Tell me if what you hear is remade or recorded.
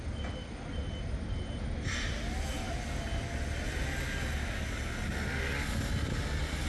recorded